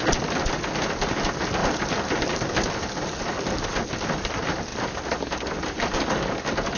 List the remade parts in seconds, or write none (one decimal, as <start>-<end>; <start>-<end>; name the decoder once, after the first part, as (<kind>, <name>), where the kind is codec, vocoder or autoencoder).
none